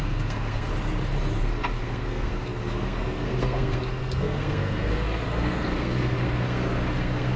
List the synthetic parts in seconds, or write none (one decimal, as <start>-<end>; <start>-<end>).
0.0-0.7; 1.4-7.4